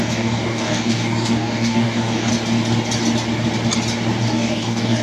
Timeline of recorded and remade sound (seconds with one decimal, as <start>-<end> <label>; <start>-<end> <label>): 0.0-2.3 remade; 2.3-4.2 recorded; 4.2-5.0 remade